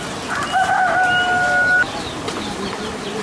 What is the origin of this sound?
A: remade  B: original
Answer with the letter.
B